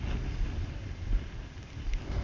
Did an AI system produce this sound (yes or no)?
no